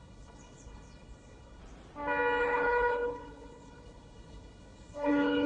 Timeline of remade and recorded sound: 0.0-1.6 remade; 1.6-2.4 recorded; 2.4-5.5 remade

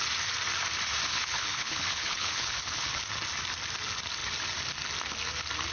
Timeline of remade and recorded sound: 0.0-1.1 recorded; 1.1-3.1 remade; 3.1-5.7 recorded

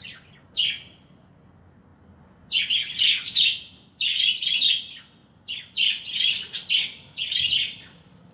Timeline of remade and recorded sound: 0.0-8.3 recorded

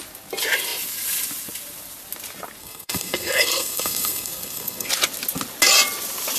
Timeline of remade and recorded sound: 0.0-2.6 recorded; 2.6-4.9 remade; 4.9-6.4 recorded

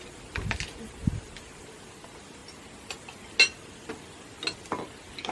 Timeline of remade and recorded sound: 0.0-5.3 recorded

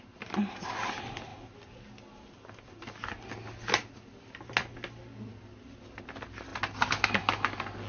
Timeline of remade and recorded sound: 0.0-7.9 recorded

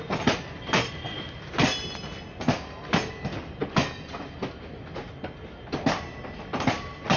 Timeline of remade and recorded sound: 0.0-7.2 recorded